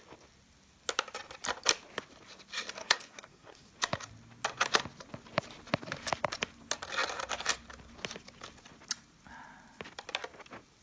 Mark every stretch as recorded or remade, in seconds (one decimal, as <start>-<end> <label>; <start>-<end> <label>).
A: 0.0-2.8 recorded; 2.8-3.7 remade; 3.7-10.8 recorded